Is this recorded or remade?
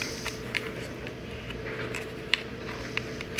remade